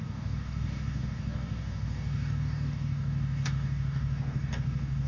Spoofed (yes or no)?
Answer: yes